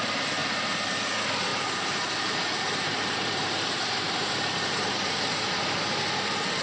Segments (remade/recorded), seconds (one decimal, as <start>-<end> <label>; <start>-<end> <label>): 0.0-0.4 recorded; 0.4-1.0 remade; 1.0-1.5 recorded; 1.5-5.5 remade; 5.5-6.6 recorded